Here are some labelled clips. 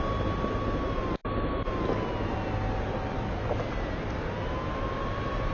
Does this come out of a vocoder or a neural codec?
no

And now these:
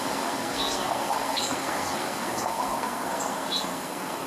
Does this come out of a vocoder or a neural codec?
yes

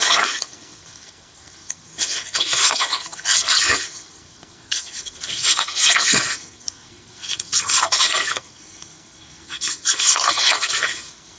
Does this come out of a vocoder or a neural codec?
yes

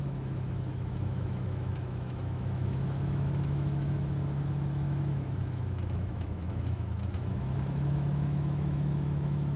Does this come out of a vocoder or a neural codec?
yes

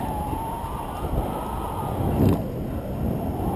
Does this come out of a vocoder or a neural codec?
no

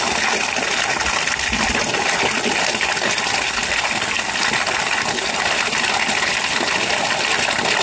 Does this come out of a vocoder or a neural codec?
no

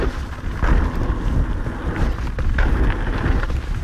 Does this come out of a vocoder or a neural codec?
no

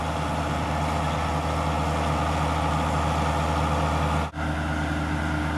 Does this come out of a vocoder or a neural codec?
no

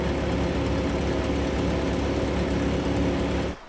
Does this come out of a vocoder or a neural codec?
no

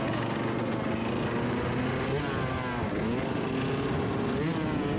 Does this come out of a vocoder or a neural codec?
no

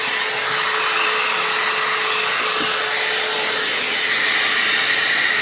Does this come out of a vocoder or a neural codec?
no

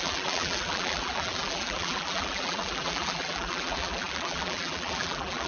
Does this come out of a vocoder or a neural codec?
yes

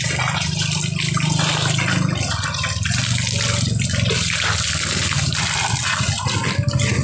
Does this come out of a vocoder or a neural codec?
no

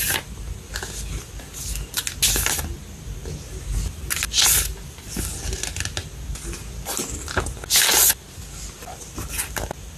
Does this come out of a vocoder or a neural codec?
no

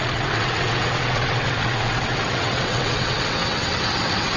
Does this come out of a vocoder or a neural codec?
yes